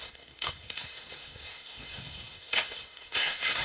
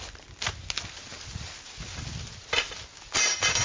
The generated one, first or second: first